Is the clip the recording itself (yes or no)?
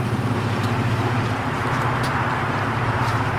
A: no